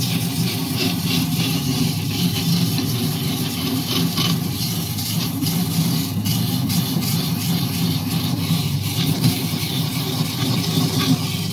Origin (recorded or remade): remade